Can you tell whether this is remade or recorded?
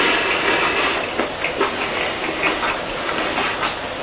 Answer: recorded